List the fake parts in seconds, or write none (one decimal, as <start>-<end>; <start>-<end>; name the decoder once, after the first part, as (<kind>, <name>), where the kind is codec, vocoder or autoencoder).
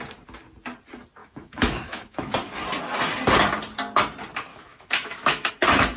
1.2-2.3 (autoencoder, DAC-VAE); 4.5-5.5